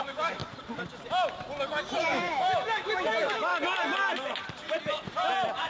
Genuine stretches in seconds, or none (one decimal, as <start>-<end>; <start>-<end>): 0.4-2.0; 3.5-5.7